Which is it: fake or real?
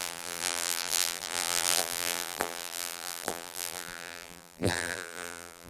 fake